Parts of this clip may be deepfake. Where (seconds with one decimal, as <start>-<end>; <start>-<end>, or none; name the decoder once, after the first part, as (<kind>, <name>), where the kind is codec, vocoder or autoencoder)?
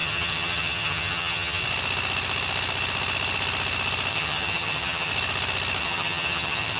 0.0-1.6 (vocoder, HiFi-GAN); 4.1-5.1; 5.8-6.8